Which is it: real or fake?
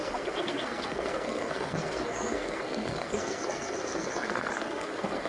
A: fake